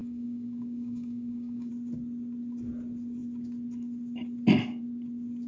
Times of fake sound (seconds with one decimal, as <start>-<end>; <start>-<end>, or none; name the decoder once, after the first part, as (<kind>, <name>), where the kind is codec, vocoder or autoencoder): 0.0-1.7 (codec, DAC)

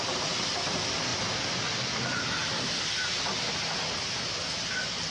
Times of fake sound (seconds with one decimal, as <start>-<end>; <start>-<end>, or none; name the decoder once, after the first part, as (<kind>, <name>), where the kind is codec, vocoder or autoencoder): none

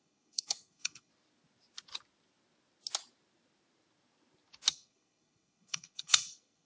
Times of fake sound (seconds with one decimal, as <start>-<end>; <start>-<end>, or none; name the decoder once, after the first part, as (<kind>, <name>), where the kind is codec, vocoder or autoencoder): 0.0-1.1 (codec, SNAC); 4.7-6.7

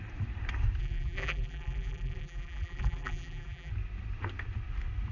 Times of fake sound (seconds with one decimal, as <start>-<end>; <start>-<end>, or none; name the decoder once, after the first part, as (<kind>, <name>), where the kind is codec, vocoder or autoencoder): 0.8-3.7 (vocoder, BigVGAN v2)

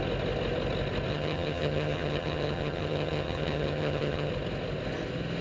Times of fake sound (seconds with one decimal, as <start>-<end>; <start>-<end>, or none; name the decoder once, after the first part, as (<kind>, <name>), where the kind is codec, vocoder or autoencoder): 1.1-4.3 (vocoder, HiFi-GAN)

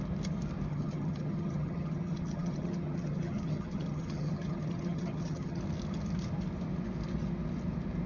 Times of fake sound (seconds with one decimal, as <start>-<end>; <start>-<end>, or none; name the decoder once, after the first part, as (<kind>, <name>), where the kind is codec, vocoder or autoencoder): 0.7-5.6 (vocoder, HiFi-GAN)